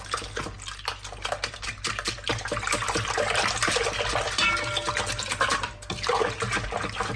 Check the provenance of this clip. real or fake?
real